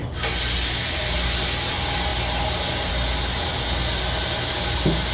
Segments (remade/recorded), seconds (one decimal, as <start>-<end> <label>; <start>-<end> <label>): 0.0-5.1 recorded